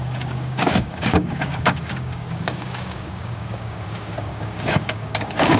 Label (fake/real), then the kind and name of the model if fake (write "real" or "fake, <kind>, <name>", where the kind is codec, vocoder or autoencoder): fake, codec, DAC